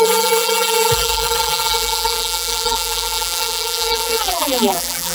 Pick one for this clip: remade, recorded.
remade